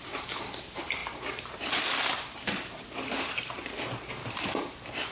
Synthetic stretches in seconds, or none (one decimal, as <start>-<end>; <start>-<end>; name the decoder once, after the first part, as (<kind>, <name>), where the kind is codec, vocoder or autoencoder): 0.0-5.1 (vocoder, BigVGAN v2)